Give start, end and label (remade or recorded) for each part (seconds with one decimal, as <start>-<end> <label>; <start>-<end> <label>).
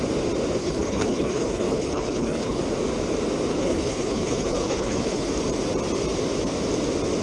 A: 0.0-0.6 recorded; 0.6-2.6 remade; 2.6-3.5 recorded; 3.5-5.3 remade; 5.3-7.2 recorded